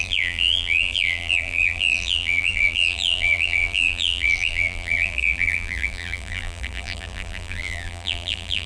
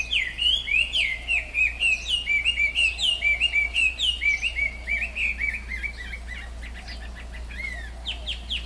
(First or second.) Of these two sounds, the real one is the second